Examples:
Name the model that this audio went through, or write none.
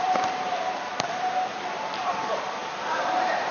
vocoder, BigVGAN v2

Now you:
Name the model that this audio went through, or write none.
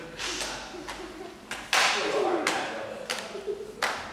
none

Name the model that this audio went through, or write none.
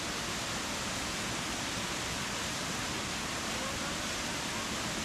none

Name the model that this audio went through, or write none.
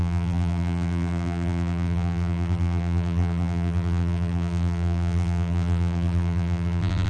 vocoder, BigVGAN v2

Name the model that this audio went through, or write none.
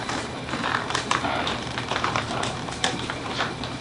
vocoder, BigVGAN v2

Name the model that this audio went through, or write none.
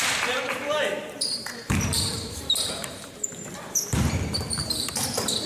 vocoder, BigVGAN v2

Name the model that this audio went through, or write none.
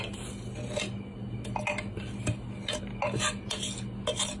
none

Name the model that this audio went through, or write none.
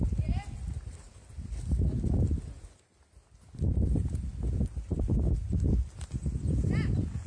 none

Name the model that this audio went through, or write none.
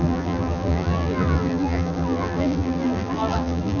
vocoder, BigVGAN v2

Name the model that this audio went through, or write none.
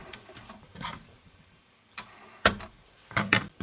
vocoder, BigVGAN v2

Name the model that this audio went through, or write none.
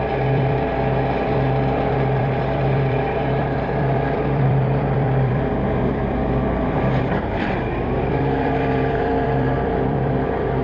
vocoder, BigVGAN v2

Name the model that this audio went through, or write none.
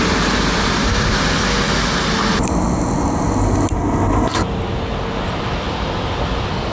none